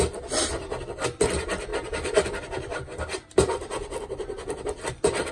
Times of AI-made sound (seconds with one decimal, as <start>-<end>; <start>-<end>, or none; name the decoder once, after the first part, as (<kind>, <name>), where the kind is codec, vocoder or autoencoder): none